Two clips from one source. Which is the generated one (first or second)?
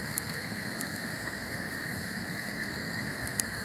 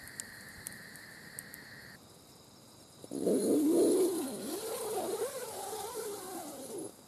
first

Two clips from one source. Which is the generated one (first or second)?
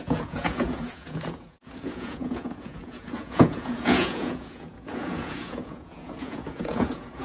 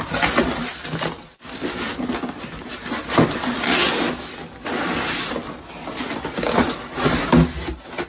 first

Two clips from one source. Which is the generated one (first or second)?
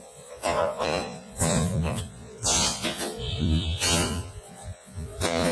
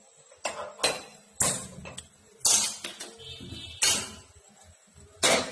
first